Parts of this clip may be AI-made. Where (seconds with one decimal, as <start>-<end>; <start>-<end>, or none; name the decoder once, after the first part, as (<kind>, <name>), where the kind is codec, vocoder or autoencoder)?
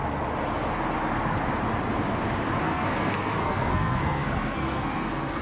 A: 2.6-5.4 (codec, SNAC)